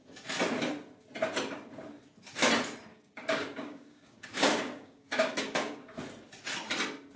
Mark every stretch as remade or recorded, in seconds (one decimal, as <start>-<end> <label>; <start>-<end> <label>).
0.0-2.9 recorded; 2.9-6.0 remade; 6.0-7.2 recorded